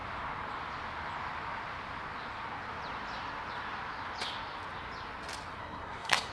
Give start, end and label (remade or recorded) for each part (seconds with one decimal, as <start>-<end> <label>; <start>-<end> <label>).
0.0-5.6 recorded; 5.6-6.3 remade